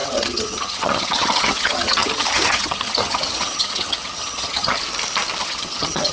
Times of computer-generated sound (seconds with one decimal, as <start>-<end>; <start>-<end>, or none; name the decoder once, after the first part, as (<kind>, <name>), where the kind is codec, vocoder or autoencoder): 0.0-4.8 (vocoder, HiFi-GAN); 5.4-6.1